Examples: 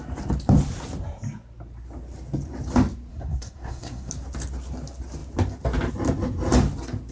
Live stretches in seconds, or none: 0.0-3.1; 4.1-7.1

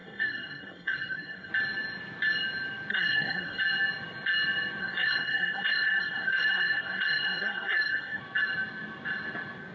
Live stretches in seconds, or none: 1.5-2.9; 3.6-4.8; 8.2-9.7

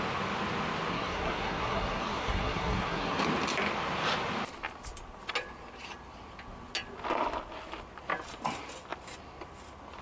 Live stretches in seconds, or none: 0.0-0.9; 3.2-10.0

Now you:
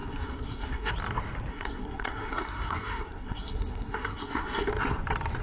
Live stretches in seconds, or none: 0.9-1.5; 4.7-5.4